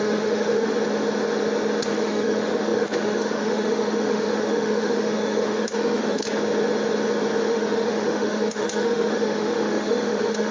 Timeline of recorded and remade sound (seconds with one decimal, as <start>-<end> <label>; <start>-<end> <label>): 0.0-0.7 remade; 0.7-1.9 recorded; 1.9-6.2 remade; 6.2-7.5 recorded; 7.5-10.5 remade